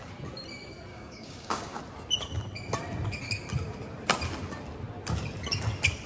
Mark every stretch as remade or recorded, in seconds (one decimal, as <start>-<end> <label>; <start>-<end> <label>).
0.0-0.9 recorded; 0.9-1.8 remade; 1.8-6.1 recorded